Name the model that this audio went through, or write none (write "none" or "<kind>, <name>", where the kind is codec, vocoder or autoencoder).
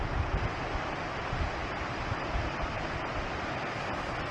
none